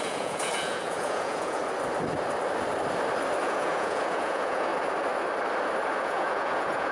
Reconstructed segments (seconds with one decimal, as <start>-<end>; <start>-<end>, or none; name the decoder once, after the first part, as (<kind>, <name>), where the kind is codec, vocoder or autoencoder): 0.0-1.6 (vocoder, Vocos); 3.4-4.7; 6.0-6.9